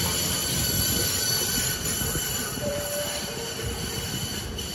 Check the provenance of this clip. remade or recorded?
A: remade